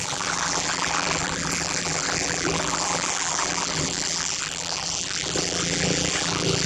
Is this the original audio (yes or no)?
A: no